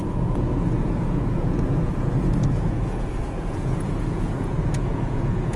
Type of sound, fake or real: fake